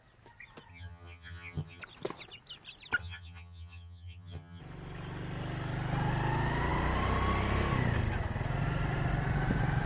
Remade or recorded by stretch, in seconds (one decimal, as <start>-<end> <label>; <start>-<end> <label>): 0.0-0.7 recorded; 0.7-1.8 remade; 1.8-3.0 recorded; 3.0-4.6 remade; 4.6-9.9 recorded